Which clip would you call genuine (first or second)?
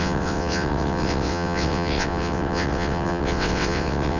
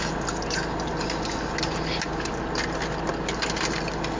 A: second